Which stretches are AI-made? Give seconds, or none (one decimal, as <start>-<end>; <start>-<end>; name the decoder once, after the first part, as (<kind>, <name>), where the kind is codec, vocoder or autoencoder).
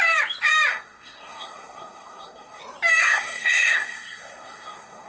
0.7-2.6 (codec, SNAC); 3.0-5.1